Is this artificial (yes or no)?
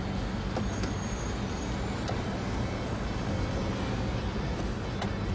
no